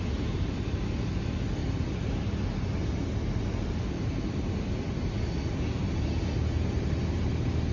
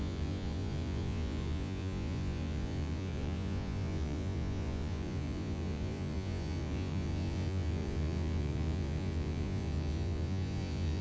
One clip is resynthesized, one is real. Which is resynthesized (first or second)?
second